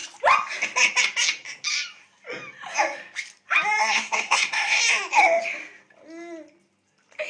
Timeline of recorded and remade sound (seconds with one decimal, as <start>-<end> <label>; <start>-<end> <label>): 0.0-3.8 recorded; 3.8-4.8 remade; 4.8-7.3 recorded

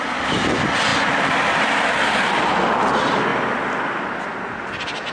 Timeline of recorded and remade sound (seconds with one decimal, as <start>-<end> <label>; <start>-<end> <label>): 0.0-5.1 recorded